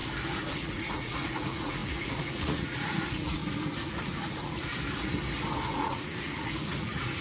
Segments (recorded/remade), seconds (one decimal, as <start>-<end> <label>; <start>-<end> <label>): 0.0-0.5 recorded; 0.5-3.4 remade; 3.4-3.9 recorded; 3.9-4.7 remade; 4.7-5.7 recorded; 5.7-7.2 remade